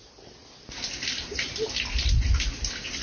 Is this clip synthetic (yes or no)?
no